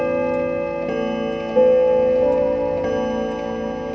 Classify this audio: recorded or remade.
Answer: recorded